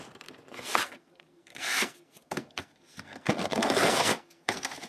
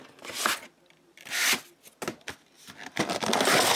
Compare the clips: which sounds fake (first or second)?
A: first